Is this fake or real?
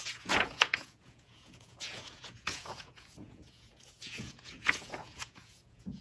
fake